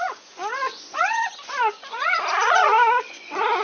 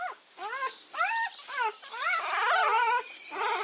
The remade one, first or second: first